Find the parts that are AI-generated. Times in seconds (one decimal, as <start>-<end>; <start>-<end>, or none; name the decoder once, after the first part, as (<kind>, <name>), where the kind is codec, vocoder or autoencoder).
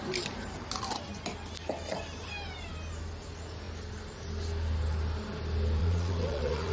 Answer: 5.8-6.7 (vocoder, Vocos)